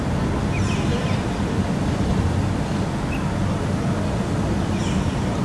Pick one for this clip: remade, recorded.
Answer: recorded